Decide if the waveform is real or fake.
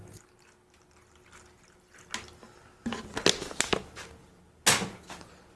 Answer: real